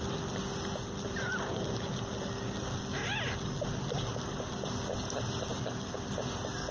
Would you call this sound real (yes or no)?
yes